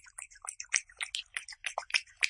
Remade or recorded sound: recorded